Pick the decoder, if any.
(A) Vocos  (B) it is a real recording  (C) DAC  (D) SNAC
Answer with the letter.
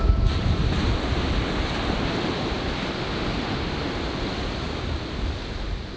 B